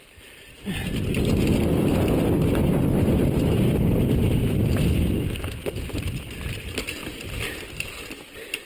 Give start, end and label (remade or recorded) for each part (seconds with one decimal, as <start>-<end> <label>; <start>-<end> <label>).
0.0-1.5 recorded; 1.5-3.5 remade; 3.5-4.4 recorded; 4.4-5.1 remade; 5.1-7.0 recorded; 7.0-8.1 remade; 8.1-8.7 recorded